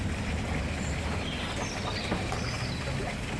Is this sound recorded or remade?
recorded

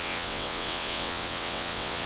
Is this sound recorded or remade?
remade